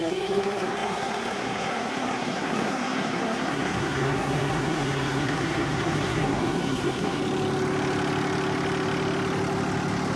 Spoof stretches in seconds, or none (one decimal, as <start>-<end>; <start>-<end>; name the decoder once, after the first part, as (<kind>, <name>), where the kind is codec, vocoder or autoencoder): 0.0-7.2 (codec, SNAC)